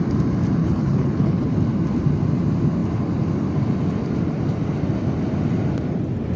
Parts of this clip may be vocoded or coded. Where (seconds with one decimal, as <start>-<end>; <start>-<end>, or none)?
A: 0.6-1.5